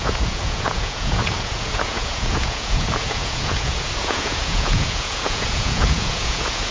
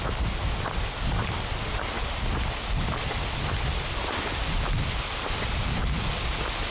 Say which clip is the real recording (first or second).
second